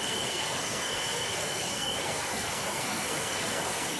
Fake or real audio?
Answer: fake